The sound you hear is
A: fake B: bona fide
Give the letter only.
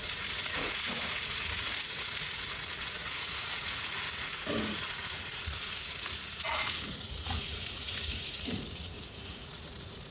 A